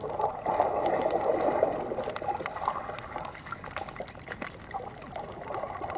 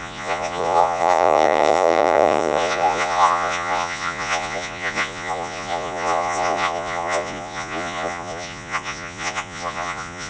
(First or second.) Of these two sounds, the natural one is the first